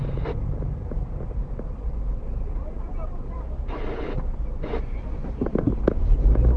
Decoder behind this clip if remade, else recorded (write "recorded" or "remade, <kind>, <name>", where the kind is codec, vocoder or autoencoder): remade, vocoder, BigVGAN v2